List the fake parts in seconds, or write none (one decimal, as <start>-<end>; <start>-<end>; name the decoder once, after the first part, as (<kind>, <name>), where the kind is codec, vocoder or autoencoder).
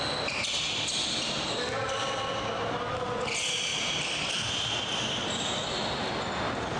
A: none